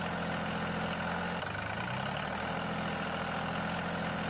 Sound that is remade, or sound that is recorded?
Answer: recorded